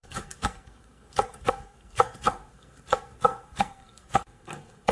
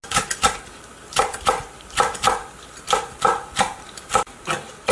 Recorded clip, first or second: second